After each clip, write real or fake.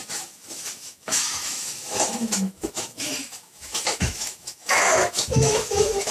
fake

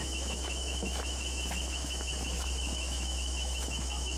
fake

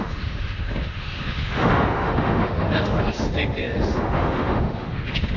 fake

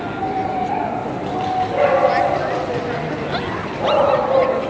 real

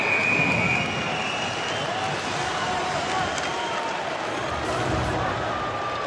real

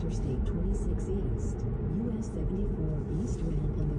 real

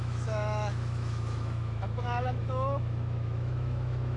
fake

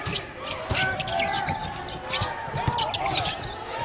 real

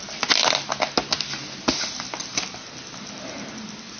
real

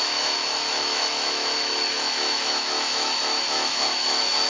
fake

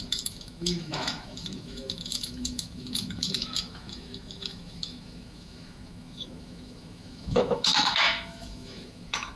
fake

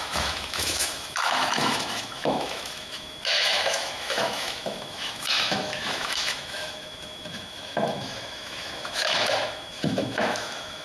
fake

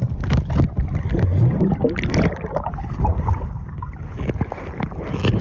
real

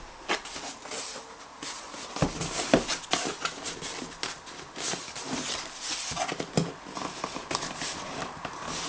real